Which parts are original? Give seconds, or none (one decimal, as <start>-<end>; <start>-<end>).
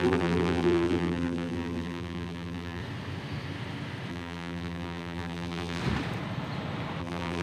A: 2.8-4.1; 5.8-7.0